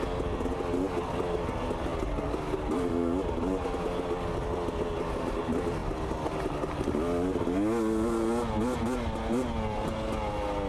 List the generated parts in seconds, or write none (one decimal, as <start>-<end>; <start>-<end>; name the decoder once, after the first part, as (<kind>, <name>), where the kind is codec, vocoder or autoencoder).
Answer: none